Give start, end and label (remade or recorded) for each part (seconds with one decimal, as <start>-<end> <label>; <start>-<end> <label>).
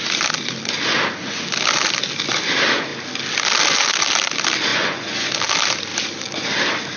0.0-4.7 recorded; 4.7-5.3 remade; 5.3-7.0 recorded